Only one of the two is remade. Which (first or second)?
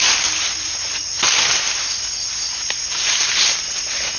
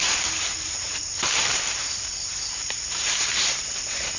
second